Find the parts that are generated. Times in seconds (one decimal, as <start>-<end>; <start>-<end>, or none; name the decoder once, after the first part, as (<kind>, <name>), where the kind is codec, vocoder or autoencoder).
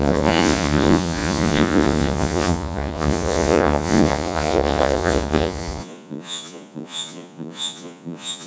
0.0-8.5 (vocoder, Vocos)